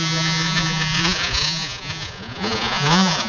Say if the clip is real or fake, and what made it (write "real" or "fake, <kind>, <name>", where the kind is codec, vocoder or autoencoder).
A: fake, vocoder, Vocos